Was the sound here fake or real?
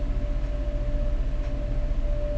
real